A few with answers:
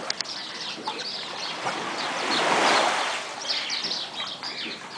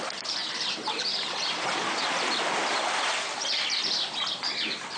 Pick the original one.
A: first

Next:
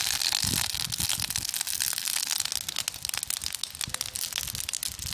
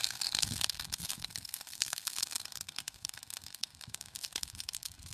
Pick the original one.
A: first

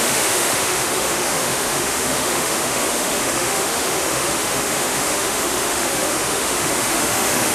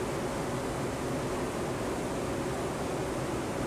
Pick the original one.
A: second